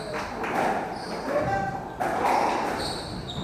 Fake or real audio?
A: real